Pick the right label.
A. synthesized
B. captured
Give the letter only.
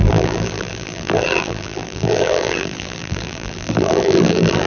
A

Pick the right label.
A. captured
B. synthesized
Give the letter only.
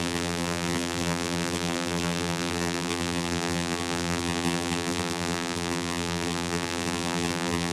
B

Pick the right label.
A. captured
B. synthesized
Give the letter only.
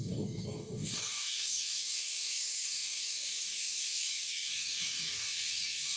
B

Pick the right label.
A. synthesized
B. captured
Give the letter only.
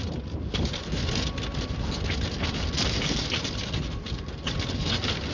B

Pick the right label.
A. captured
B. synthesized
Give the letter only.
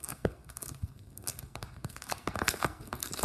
B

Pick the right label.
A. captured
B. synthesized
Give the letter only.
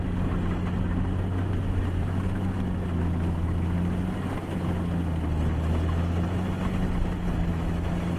A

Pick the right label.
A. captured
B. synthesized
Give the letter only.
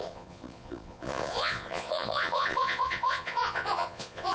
B